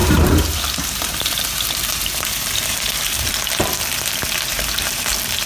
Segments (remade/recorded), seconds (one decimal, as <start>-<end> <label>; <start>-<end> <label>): 0.0-3.3 remade; 3.3-4.5 recorded; 4.5-5.1 remade; 5.1-5.5 recorded